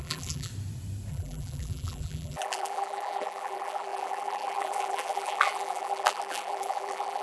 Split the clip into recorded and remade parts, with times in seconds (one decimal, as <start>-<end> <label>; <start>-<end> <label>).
0.0-0.5 remade; 0.5-1.1 recorded; 1.1-7.2 remade